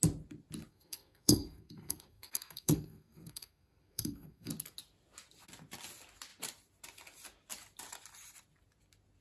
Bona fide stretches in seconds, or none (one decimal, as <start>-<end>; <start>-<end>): 0.0-0.7; 4.5-9.2